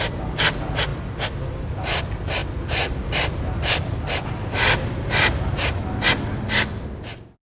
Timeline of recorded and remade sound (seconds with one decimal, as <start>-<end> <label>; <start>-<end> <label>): 0.0-7.6 recorded